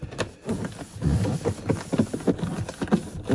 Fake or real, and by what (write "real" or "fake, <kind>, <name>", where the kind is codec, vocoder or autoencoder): real